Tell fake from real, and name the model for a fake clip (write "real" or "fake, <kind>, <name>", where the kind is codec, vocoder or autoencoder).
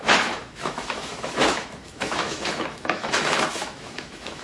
fake, autoencoder, DAC-VAE